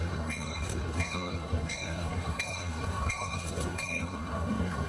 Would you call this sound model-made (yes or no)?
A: yes